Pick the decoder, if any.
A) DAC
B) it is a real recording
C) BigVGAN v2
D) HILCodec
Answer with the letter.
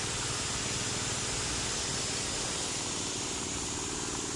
B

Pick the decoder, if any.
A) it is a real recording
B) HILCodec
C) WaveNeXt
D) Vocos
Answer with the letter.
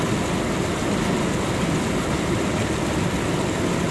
A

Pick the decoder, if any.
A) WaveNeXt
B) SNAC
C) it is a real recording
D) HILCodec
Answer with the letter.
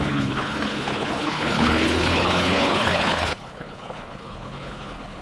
D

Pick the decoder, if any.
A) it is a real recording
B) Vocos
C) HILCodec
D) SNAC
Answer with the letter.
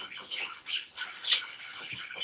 C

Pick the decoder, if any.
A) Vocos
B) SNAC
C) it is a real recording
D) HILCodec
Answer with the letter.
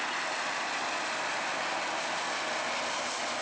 C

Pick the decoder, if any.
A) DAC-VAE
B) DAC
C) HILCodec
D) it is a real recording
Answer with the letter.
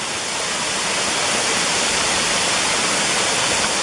D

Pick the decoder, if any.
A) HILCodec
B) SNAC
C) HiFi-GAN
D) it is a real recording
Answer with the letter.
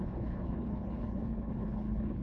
A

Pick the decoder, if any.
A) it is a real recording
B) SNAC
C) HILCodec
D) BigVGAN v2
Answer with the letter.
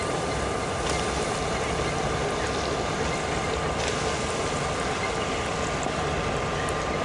A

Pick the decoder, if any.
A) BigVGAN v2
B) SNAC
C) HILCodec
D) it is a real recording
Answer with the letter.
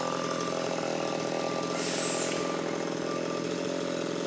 D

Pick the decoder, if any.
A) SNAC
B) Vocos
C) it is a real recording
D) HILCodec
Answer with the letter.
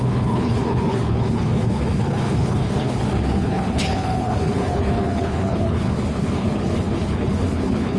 D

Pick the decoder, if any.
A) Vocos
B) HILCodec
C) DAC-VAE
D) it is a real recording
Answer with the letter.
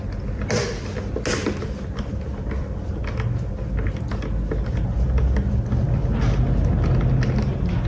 D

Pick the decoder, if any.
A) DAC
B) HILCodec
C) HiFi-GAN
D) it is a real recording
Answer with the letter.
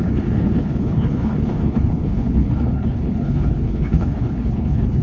B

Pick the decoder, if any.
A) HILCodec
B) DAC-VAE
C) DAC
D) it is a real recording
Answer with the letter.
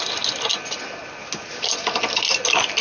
D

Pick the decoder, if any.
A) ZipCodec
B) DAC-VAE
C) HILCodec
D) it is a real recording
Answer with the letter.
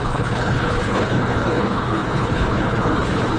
C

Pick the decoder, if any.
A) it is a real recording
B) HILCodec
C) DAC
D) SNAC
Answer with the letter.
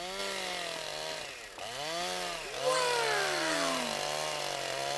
A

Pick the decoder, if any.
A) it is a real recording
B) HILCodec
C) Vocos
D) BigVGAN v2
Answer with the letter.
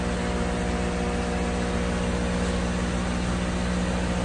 A